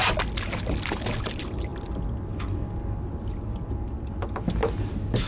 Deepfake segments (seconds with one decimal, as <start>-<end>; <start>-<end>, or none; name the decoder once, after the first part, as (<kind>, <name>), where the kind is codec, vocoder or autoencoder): none